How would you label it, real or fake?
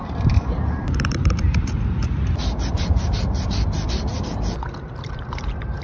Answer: fake